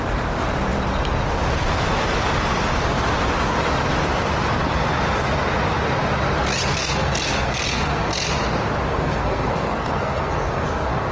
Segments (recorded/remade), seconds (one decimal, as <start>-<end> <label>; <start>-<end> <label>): 0.0-6.8 recorded; 6.8-8.3 remade; 8.3-8.9 recorded; 8.9-11.1 remade